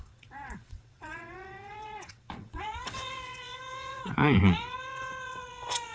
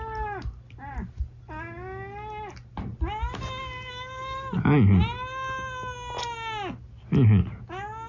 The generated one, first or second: first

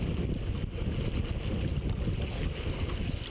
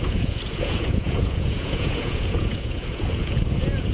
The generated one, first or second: second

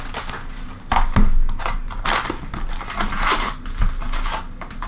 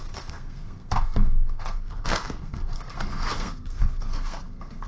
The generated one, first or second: second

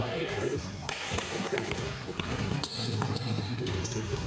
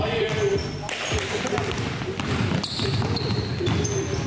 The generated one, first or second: first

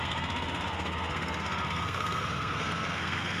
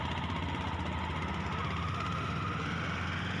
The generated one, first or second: first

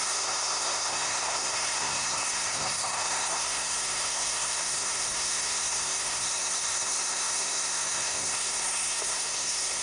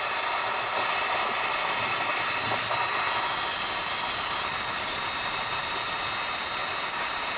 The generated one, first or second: first